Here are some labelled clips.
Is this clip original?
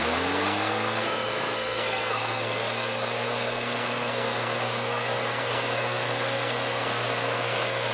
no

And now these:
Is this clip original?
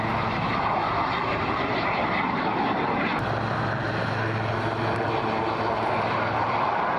yes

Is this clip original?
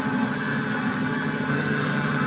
no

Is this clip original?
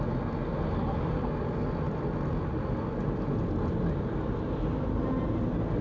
yes